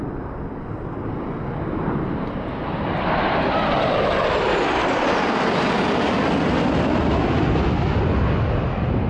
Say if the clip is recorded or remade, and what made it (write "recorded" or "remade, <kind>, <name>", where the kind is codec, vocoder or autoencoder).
recorded